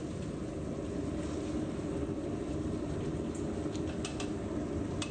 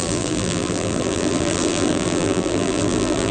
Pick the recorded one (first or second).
first